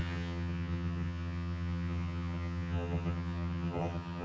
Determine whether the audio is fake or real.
fake